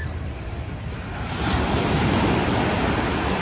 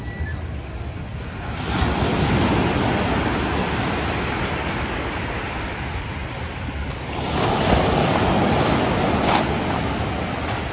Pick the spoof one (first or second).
first